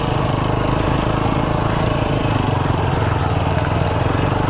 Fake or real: real